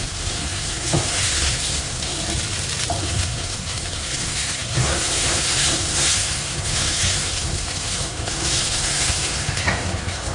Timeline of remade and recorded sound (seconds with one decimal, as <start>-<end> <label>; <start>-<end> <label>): 0.0-2.2 remade; 2.2-3.0 recorded; 3.0-10.3 remade